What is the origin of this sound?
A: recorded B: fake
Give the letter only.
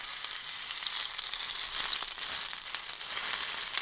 A